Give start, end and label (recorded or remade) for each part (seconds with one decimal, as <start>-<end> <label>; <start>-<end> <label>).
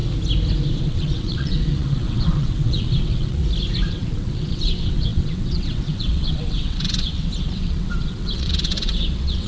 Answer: 0.0-0.8 recorded; 0.8-3.4 remade; 3.4-3.9 recorded; 3.9-9.5 remade